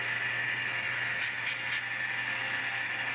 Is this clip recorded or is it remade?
recorded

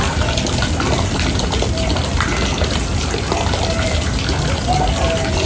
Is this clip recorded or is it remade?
recorded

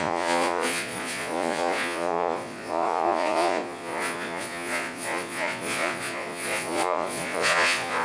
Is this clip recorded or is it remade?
remade